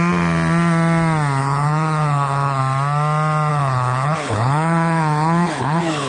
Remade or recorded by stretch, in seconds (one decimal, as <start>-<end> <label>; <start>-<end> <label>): 0.0-1.4 recorded; 1.4-2.6 remade; 2.6-3.5 recorded; 3.5-6.1 remade